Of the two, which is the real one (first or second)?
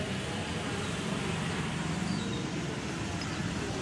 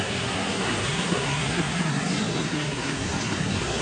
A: first